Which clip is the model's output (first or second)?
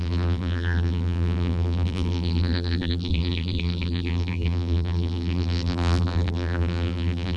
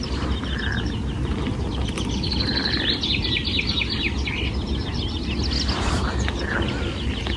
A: first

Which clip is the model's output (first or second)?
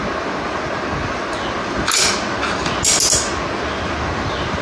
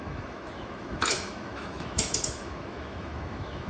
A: second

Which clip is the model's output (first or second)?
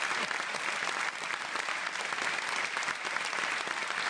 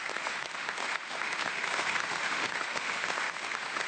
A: second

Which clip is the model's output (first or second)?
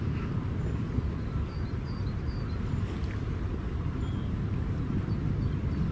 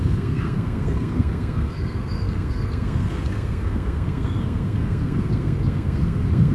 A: second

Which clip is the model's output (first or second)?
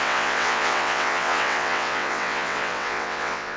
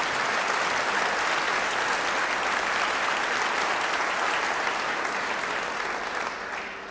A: first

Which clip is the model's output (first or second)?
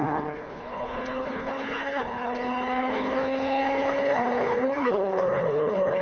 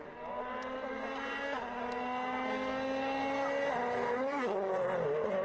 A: first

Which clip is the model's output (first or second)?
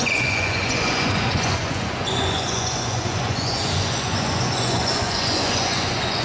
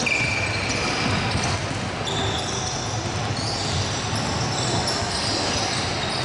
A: first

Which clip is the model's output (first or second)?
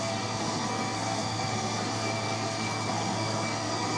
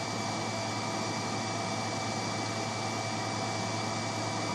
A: first